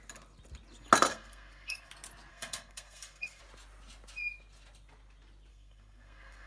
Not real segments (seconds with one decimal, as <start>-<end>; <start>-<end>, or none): 1.1-1.9; 2.3-3.4; 5.5-6.5